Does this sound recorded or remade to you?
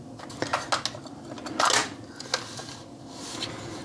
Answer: recorded